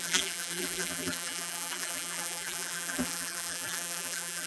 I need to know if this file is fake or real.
fake